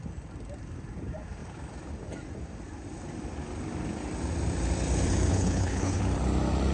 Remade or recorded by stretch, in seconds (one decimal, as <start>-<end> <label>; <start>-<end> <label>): 0.0-5.3 recorded; 5.3-6.0 remade; 6.0-6.7 recorded